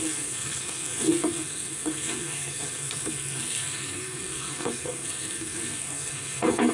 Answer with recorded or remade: remade